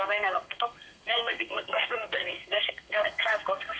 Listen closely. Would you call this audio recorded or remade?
remade